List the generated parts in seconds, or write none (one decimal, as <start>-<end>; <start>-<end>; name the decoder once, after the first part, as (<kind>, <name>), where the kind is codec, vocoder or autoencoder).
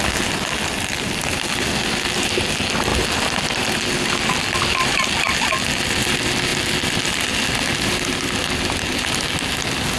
none